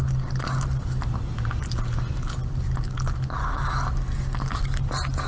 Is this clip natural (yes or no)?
yes